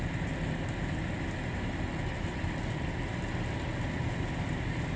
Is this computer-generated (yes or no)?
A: no